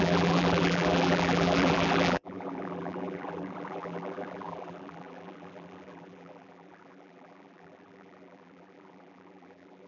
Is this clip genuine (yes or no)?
no